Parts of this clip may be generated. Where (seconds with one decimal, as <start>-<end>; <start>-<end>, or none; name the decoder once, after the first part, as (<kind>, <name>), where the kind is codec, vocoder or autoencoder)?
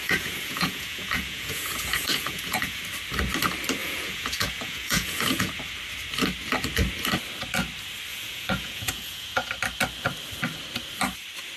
0.0-2.8 (vocoder, Vocos); 3.8-5.5; 8.1-9.5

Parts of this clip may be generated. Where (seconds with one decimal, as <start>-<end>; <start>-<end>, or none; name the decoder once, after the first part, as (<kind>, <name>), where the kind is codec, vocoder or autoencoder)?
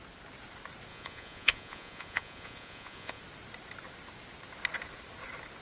0.9-3.2 (vocoder, Vocos)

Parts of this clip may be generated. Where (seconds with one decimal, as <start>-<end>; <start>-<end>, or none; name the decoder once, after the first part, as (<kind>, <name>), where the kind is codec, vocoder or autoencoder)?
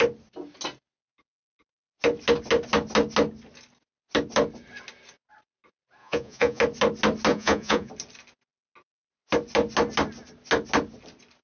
6.0-6.6 (vocoder, Vocos); 7.3-7.9